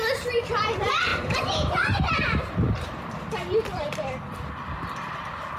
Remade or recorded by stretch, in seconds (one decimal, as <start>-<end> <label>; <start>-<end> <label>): 0.0-1.1 recorded; 1.1-4.5 remade; 4.5-5.6 recorded